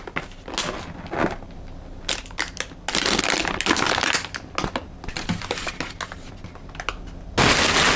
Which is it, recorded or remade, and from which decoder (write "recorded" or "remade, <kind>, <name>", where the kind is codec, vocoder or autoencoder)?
recorded